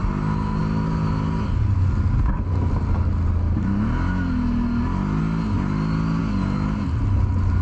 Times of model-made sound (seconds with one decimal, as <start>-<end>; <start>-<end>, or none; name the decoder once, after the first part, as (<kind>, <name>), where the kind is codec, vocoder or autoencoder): none